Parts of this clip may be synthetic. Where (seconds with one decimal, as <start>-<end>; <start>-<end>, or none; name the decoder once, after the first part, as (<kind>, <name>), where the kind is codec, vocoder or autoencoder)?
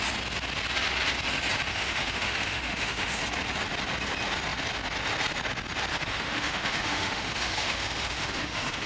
1.7-3.2 (autoencoder, DAC-VAE); 5.9-8.9